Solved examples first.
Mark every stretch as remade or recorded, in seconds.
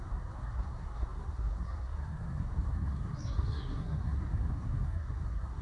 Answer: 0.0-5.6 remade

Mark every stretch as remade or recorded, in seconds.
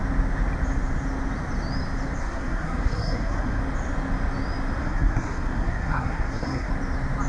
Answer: 0.0-2.2 recorded; 2.2-3.6 remade; 3.6-4.8 recorded; 4.8-6.7 remade; 6.7-7.3 recorded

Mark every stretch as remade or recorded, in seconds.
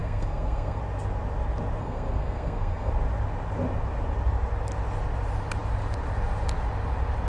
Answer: 0.0-0.8 remade; 0.8-1.8 recorded; 1.8-2.9 remade; 2.9-7.3 recorded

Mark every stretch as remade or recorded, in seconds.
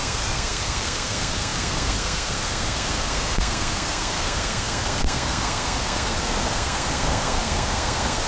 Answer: 0.0-8.3 remade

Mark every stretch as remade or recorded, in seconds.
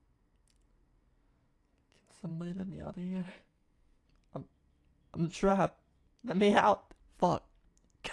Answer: 0.0-2.3 recorded; 2.3-4.0 remade; 4.0-8.1 recorded